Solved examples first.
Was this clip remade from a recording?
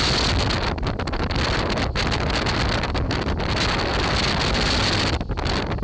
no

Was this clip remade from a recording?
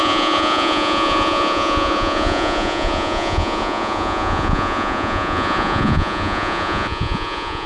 yes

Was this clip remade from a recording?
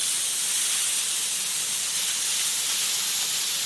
no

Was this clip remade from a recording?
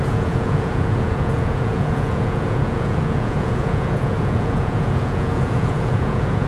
yes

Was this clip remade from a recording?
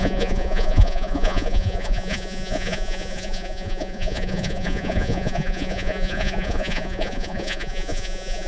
yes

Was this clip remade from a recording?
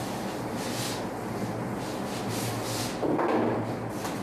no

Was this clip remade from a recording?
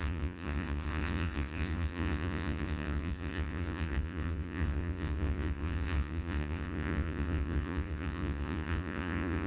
yes